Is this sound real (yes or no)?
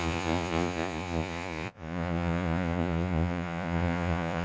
no